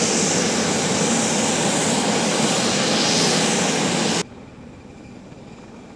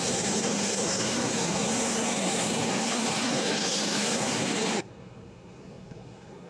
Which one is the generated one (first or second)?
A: second